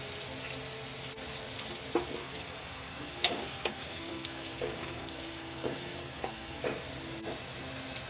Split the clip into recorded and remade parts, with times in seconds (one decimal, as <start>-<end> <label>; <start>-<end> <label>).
0.0-2.2 recorded; 2.2-6.6 remade; 6.6-8.1 recorded